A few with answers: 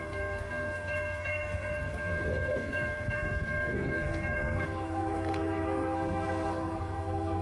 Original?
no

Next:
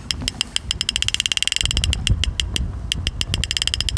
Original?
yes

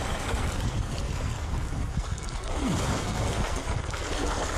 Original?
no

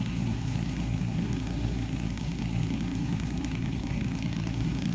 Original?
no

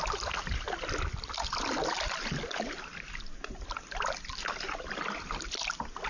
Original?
yes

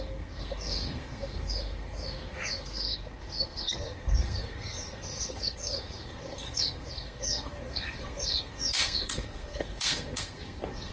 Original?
no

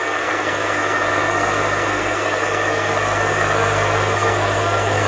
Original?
no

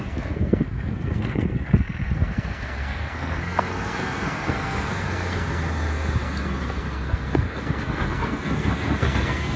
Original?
no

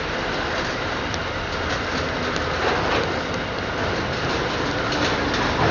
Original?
yes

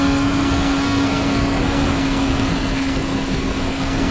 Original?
no